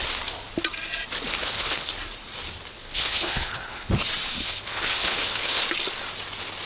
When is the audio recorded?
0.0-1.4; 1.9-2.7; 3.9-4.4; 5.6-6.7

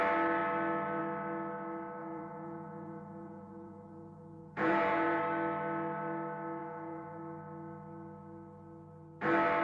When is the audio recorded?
0.0-2.0; 5.2-6.6; 7.2-9.6

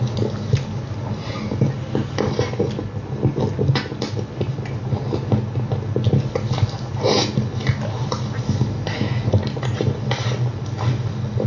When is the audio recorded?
0.0-11.5